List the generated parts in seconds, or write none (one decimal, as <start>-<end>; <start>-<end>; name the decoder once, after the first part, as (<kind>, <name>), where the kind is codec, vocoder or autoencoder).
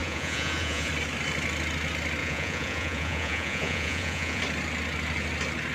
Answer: 0.0-0.9 (vocoder, Vocos); 2.2-4.4